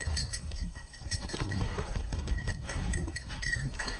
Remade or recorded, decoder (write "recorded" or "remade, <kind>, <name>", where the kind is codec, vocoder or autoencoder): remade, codec, SNAC